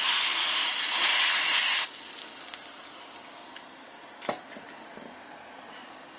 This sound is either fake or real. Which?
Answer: real